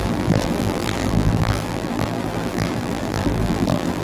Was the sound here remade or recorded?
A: remade